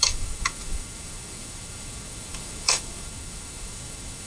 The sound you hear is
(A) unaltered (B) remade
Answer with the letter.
B